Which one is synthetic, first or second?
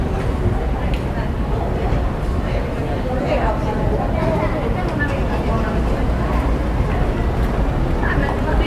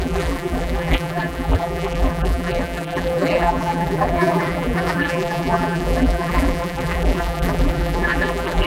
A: second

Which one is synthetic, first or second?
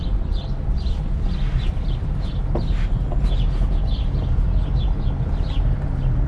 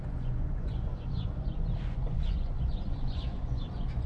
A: second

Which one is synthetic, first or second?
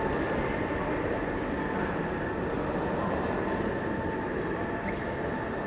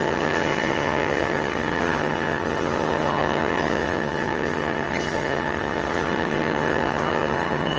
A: second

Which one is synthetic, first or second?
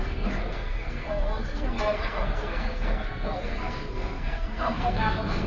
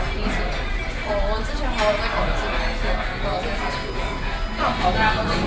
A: first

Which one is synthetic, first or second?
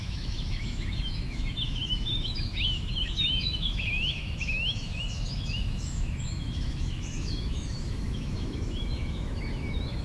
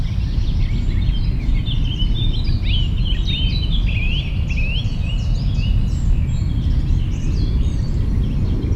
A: first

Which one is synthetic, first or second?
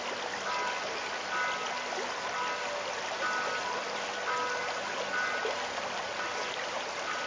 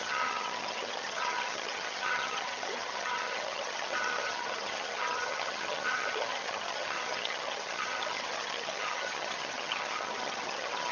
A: second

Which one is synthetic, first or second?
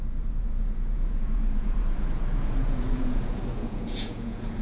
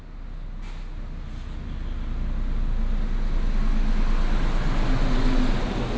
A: first